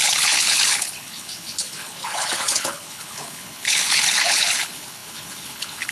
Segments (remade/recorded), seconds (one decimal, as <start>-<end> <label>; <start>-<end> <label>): 0.0-5.9 remade